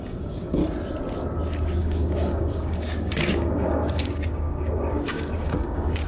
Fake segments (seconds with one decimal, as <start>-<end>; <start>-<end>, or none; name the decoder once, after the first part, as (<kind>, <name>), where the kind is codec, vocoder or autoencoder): 0.0-0.6 (codec, DAC); 1.8-6.1